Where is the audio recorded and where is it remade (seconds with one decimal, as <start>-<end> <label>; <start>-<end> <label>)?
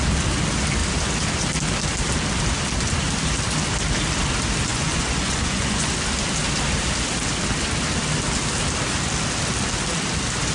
0.0-4.7 recorded; 4.7-5.9 remade; 5.9-10.5 recorded